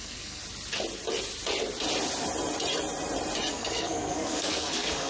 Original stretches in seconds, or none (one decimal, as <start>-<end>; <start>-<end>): 0.4-3.5